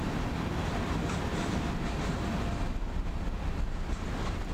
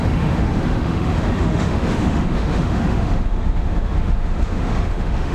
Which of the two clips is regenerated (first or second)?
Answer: second